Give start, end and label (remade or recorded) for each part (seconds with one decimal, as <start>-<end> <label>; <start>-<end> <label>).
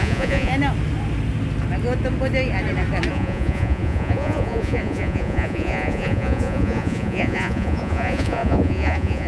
0.0-0.5 remade; 0.5-3.1 recorded; 3.1-9.3 remade